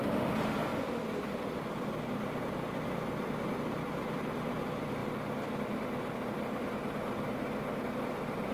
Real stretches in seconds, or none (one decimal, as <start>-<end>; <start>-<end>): 0.0-8.5

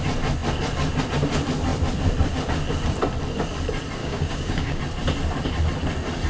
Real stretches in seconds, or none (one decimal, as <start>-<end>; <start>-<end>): 0.0-4.0; 4.8-6.3

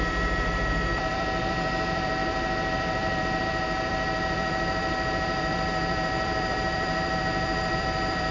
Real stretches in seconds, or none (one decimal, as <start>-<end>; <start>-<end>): none

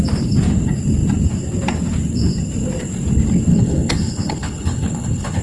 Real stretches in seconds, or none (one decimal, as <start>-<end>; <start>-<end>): 0.0-3.5

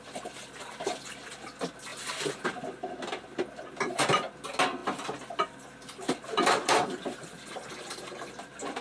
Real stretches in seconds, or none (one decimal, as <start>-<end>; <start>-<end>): 0.0-8.8

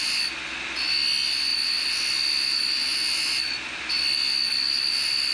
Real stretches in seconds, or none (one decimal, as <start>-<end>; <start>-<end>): 0.0-5.3

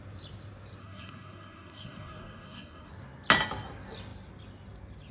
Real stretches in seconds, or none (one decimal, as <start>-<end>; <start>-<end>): 0.0-0.8; 2.9-5.1

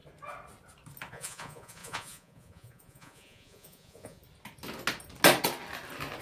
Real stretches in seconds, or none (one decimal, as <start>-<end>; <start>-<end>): 0.0-1.1; 4.2-6.2